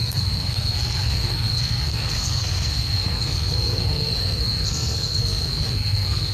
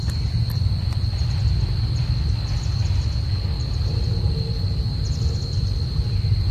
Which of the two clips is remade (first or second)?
first